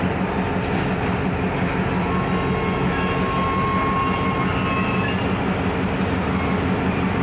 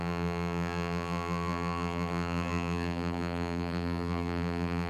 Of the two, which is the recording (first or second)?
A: first